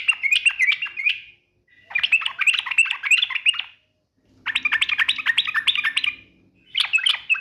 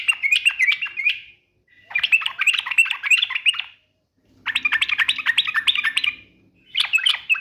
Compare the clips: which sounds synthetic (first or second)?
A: second